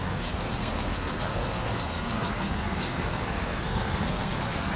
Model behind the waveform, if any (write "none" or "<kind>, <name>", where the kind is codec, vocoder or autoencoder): codec, SNAC